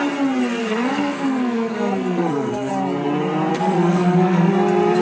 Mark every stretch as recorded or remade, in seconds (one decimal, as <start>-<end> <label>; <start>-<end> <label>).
0.0-0.6 recorded; 0.6-2.7 remade; 2.7-3.5 recorded; 3.5-4.5 remade; 4.5-5.0 recorded

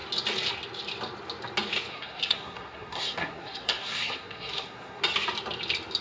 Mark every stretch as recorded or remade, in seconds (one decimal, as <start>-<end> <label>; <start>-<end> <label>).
0.0-1.9 recorded; 1.9-5.0 remade; 5.0-6.0 recorded

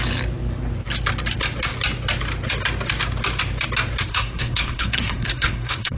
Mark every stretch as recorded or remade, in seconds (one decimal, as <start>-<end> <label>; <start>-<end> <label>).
0.0-4.1 recorded; 4.1-6.0 remade